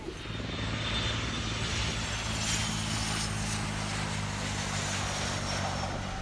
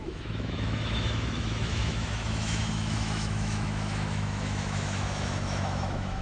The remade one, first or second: second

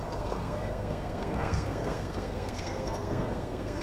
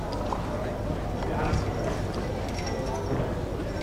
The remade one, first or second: first